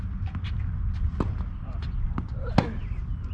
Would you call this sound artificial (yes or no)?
no